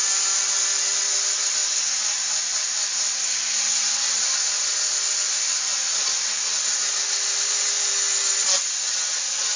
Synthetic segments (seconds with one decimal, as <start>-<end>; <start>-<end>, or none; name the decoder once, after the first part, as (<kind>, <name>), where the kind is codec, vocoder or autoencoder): 0.0-1.0 (vocoder, BigVGAN v2); 5.7-6.4